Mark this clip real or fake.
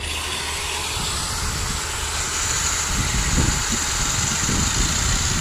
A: real